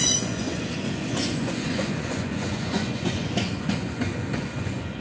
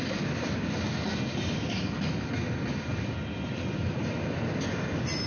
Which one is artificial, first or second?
first